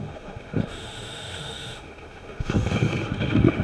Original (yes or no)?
no